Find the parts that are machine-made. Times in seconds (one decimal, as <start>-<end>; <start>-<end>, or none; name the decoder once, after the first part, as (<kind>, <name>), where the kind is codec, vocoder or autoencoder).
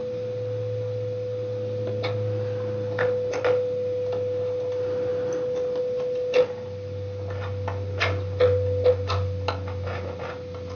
none